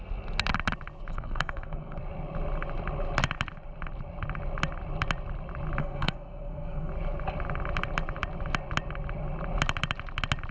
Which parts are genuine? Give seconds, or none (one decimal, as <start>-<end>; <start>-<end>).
0.0-1.1; 2.0-5.8; 6.9-10.5